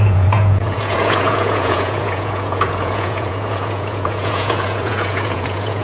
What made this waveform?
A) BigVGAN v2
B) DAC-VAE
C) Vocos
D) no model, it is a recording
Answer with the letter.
C